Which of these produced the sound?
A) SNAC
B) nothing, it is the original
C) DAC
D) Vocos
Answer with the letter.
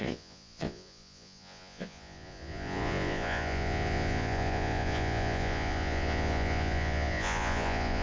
D